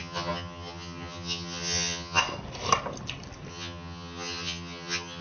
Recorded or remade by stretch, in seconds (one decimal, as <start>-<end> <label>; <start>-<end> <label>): 0.0-2.2 remade; 2.2-3.5 recorded; 3.5-5.2 remade